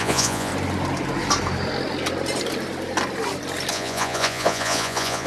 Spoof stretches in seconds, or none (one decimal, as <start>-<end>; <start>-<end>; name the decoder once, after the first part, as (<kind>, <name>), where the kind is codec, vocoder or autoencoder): 0.0-0.5 (vocoder, Vocos); 3.7-5.3

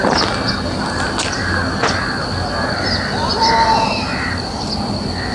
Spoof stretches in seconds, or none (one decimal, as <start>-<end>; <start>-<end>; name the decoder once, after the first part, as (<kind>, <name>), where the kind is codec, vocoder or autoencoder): none

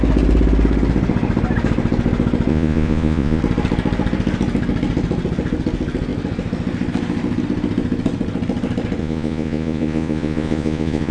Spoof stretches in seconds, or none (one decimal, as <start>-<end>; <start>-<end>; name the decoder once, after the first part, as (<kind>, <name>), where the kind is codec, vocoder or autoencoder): 2.5-3.4 (vocoder, Vocos); 9.0-11.1

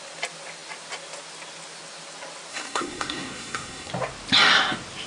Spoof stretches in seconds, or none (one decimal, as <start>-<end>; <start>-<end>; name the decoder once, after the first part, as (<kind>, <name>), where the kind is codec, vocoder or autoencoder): 2.5-3.9 (codec, SNAC)

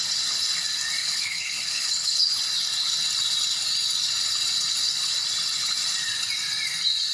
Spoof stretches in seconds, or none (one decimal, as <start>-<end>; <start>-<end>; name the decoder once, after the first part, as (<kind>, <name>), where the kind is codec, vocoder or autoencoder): 1.0-2.3 (codec, HILCodec)